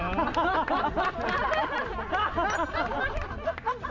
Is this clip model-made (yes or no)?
no